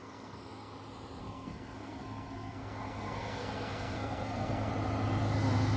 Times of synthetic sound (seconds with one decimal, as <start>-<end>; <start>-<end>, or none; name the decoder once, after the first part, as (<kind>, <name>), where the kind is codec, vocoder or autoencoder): 0.0-0.7 (codec, SNAC); 1.2-4.7